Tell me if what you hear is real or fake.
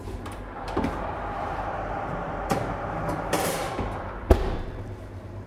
fake